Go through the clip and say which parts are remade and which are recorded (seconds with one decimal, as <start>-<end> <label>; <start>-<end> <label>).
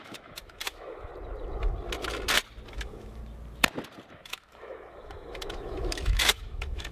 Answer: 0.0-1.1 remade; 1.1-2.7 recorded; 2.7-3.2 remade; 3.2-4.1 recorded; 4.1-6.9 remade